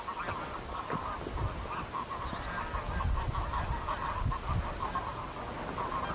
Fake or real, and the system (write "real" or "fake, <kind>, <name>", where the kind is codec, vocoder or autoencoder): real